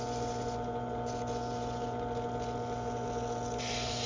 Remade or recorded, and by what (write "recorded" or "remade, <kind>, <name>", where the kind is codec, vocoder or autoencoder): recorded